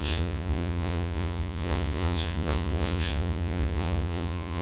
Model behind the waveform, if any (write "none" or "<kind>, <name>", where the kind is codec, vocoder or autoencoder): vocoder, Vocos